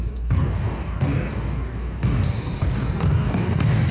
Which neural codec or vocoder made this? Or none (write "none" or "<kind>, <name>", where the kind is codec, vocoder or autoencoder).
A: codec, DAC